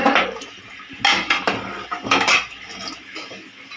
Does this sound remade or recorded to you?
recorded